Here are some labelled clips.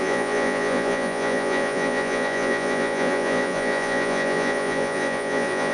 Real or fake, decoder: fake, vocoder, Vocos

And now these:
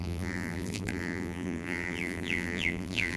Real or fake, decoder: fake, vocoder, BigVGAN v2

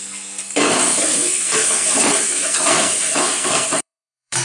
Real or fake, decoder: fake, codec, SNAC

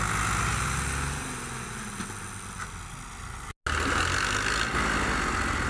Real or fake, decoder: real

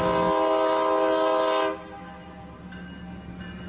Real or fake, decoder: real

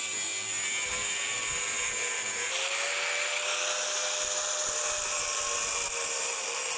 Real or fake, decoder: real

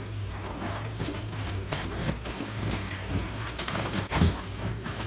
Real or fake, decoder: fake, codec, DAC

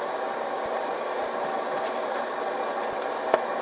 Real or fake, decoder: real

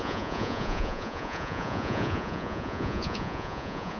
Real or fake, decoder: fake, vocoder, Vocos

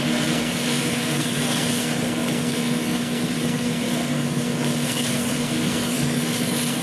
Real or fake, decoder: fake, codec, SNAC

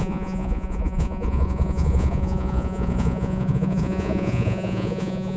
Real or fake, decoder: fake, vocoder, Vocos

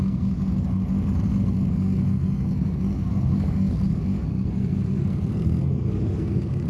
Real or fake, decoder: fake, codec, SNAC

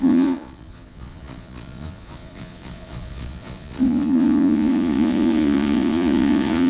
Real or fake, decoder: fake, vocoder, Vocos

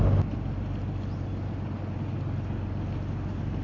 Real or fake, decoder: real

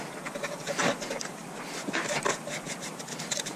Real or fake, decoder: real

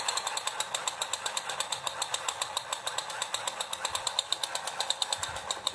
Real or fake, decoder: real